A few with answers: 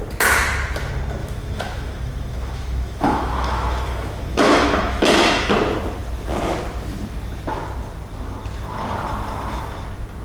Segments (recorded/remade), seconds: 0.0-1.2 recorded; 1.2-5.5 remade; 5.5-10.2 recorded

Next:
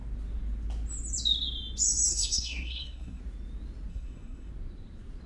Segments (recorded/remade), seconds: 0.0-2.1 recorded; 2.1-3.2 remade; 3.2-3.9 recorded; 3.9-4.5 remade; 4.5-5.3 recorded

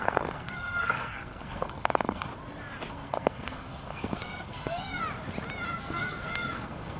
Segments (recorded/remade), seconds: 0.0-2.3 remade; 2.3-2.9 recorded; 2.9-5.0 remade; 5.0-5.8 recorded; 5.8-7.0 remade

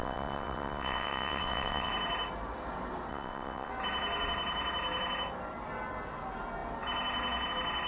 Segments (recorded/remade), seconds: 0.0-1.9 remade; 1.9-3.1 recorded; 3.1-3.7 remade; 3.7-7.9 recorded

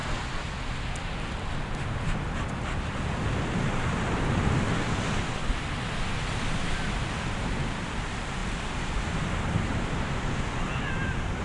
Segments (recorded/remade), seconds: 0.0-8.4 recorded; 8.4-9.9 remade; 9.9-11.4 recorded